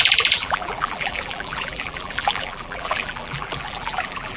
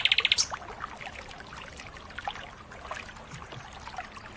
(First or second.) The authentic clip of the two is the second